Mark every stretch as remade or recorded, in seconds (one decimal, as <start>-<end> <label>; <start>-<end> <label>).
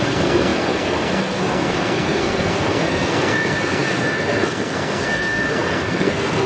0.0-6.5 remade